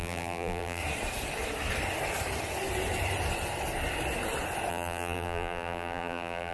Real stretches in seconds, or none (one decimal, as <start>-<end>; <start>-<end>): 0.8-4.7

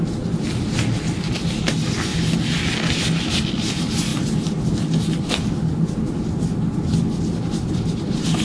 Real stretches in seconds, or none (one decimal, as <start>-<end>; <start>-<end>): 0.0-8.4

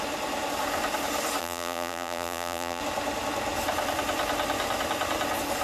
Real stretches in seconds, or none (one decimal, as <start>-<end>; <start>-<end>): 0.0-1.4; 2.8-5.6